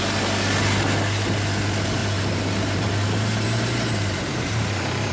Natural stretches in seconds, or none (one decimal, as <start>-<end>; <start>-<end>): 0.0-2.0